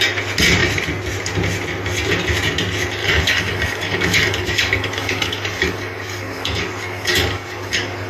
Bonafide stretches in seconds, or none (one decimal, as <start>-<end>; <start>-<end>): 0.0-3.0